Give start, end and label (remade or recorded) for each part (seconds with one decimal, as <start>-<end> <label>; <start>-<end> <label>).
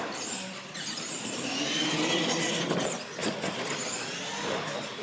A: 0.0-5.0 recorded